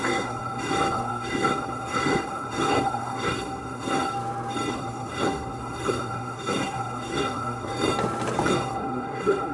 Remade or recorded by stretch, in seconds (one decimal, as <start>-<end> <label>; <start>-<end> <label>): 0.0-4.1 remade; 4.1-4.7 recorded; 4.7-7.7 remade; 7.7-8.5 recorded; 8.5-9.5 remade